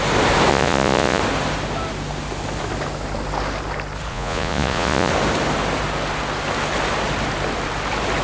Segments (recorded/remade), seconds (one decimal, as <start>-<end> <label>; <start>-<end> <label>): 0.0-0.5 recorded; 0.5-1.2 remade; 1.2-4.1 recorded; 4.1-5.1 remade; 5.1-8.2 recorded